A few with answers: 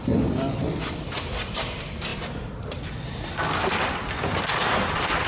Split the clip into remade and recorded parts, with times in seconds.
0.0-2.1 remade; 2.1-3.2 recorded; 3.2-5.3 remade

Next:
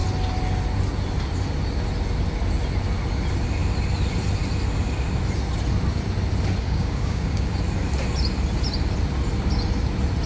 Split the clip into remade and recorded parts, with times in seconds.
0.0-6.6 recorded; 6.6-7.5 remade; 7.5-10.3 recorded

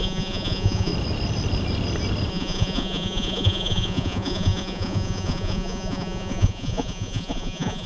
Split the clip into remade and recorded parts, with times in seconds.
0.0-0.9 remade; 0.9-2.3 recorded; 2.3-7.9 remade

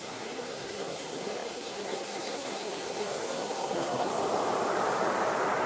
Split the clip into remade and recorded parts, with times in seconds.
0.0-4.1 remade; 4.1-5.7 recorded

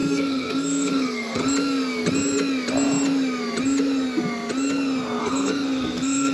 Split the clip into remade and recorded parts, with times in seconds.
0.0-1.4 remade; 1.4-5.2 recorded; 5.2-6.3 remade

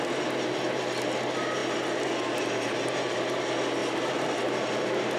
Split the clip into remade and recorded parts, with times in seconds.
0.0-5.2 recorded

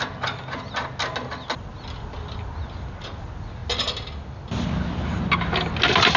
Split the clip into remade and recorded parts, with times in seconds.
0.0-6.2 recorded

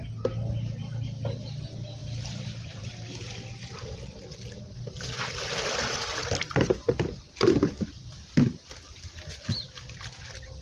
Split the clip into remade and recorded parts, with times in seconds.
0.0-10.6 recorded